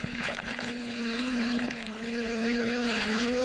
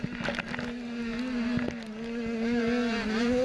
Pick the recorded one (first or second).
second